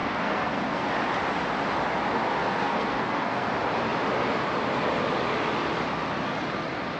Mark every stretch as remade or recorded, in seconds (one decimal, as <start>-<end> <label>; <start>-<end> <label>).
0.0-0.9 remade; 0.9-2.4 recorded; 2.4-3.5 remade; 3.5-7.0 recorded